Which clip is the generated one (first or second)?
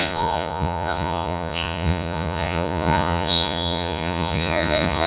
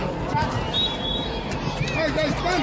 first